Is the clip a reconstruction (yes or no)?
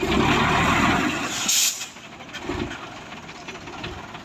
no